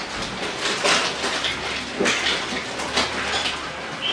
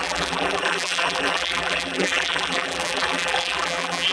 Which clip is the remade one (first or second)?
second